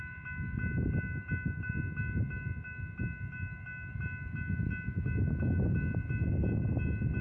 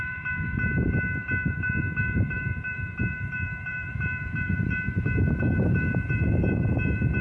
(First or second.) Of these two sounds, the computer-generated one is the second